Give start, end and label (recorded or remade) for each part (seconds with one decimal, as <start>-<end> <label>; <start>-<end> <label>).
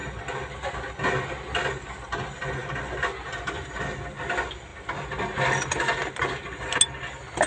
0.0-7.5 recorded